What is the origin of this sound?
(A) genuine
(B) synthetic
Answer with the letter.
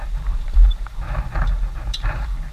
B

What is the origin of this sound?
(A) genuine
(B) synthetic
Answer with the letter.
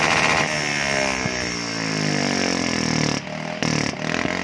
A